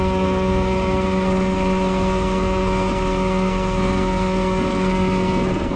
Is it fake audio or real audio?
fake